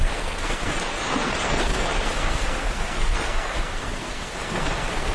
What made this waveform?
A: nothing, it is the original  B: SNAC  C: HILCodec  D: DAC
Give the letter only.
B